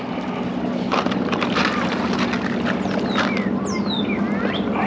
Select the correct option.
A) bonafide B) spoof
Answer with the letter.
A